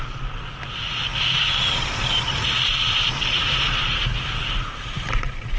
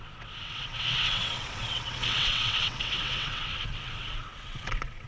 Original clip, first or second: first